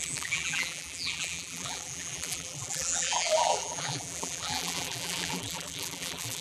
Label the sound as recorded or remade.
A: remade